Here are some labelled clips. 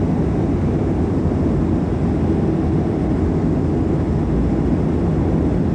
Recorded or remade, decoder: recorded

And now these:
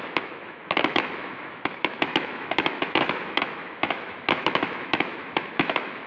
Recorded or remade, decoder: remade, autoencoder, DAC-VAE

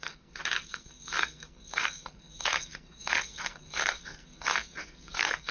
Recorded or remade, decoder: remade, codec, SNAC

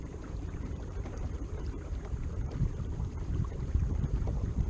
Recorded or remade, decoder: remade, vocoder, BigVGAN v2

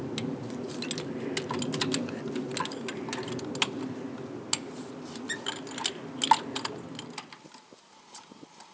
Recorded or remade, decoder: recorded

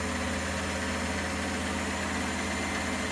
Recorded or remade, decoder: recorded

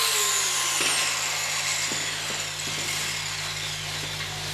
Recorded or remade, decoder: recorded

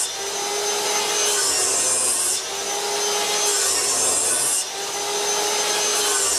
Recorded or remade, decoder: recorded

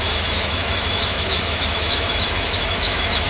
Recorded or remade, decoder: remade, autoencoder, DAC-VAE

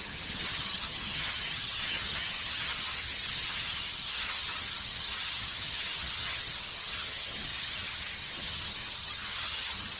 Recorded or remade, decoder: remade, vocoder, HiFi-GAN